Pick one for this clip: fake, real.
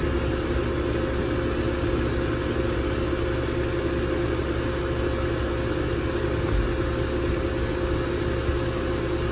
real